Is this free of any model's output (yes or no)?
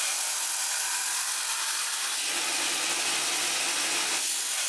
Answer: yes